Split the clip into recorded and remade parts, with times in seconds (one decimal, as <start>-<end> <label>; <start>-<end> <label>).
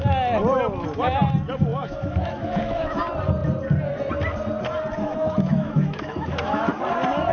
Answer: 0.0-1.7 recorded; 1.7-3.0 remade; 3.0-5.0 recorded; 5.0-6.8 remade; 6.8-7.3 recorded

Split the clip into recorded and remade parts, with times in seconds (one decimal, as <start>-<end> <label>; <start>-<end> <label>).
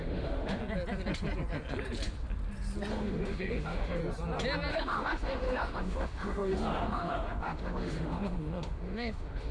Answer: 0.0-0.6 remade; 0.6-2.9 recorded; 2.9-4.0 remade; 4.0-4.7 recorded; 4.7-9.5 remade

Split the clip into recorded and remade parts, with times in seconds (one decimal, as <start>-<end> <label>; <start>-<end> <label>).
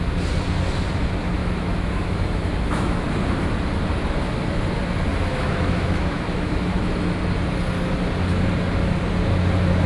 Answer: 0.0-1.4 recorded; 1.4-3.1 remade; 3.1-5.1 recorded; 5.1-6.9 remade; 6.9-9.9 recorded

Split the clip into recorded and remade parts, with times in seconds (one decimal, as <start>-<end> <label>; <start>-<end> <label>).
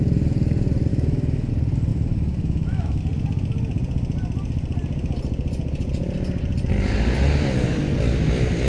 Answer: 0.0-0.9 recorded; 0.9-1.5 remade; 1.5-1.9 recorded; 1.9-3.0 remade; 3.0-8.7 recorded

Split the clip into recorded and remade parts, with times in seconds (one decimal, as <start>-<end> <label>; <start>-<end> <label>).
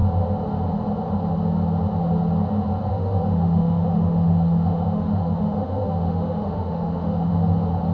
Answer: 0.0-2.9 recorded; 2.9-7.3 remade; 7.3-7.9 recorded